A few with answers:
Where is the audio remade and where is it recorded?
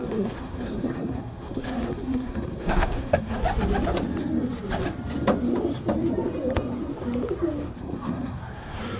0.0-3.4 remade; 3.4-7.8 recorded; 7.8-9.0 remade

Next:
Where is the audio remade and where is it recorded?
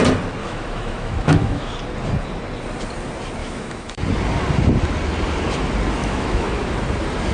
0.0-0.4 recorded; 0.4-1.7 remade; 1.7-3.4 recorded; 3.4-4.0 remade; 4.0-6.0 recorded; 6.0-6.6 remade; 6.6-7.3 recorded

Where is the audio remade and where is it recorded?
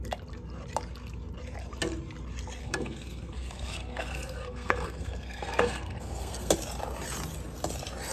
0.0-2.6 recorded; 2.6-6.5 remade; 6.5-8.1 recorded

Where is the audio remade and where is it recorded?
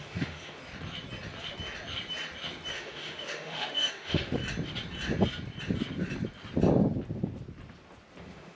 0.0-0.6 remade; 0.6-2.7 recorded; 2.7-4.4 remade; 4.4-8.2 recorded; 8.2-8.6 remade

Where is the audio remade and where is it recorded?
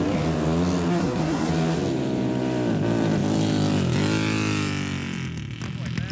0.0-0.9 recorded; 0.9-1.5 remade; 1.5-6.1 recorded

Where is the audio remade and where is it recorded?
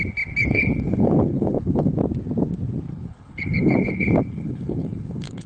0.0-0.4 recorded; 0.4-1.9 remade; 1.9-2.9 recorded; 2.9-5.5 remade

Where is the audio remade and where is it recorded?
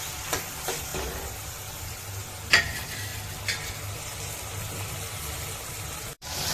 0.0-3.1 remade; 3.1-3.7 recorded; 3.7-6.5 remade